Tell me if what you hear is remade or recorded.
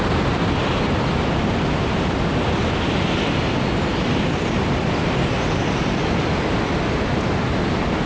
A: recorded